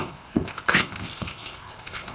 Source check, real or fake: fake